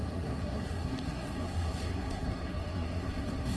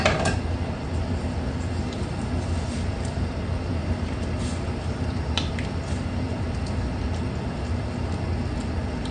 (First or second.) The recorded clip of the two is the second